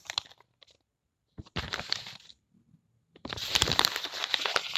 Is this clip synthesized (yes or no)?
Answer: yes